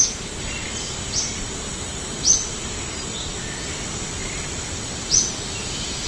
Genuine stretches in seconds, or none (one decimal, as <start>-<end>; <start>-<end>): 0.0-6.1

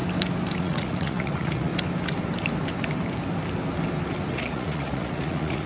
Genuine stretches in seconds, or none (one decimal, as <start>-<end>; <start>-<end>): 0.0-0.6; 1.7-4.3

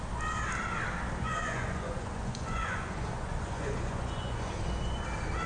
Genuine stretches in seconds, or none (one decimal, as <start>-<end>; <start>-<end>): 0.0-1.2; 4.5-5.5

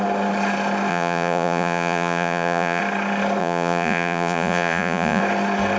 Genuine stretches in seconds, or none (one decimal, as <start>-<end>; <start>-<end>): 0.0-0.9; 2.8-3.4; 5.2-5.8

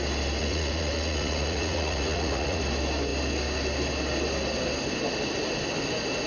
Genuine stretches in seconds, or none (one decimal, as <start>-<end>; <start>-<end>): 0.0-0.4; 2.6-6.3

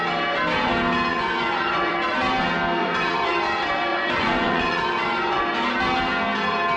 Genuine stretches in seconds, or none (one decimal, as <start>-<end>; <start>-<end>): 0.0-1.1; 1.9-2.8; 3.4-3.9; 5.4-6.8

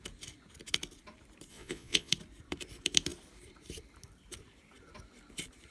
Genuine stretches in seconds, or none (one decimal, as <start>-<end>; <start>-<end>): 0.0-1.5; 2.1-5.7

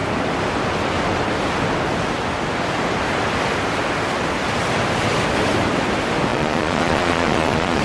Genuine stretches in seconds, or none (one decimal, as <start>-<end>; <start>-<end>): 0.0-6.3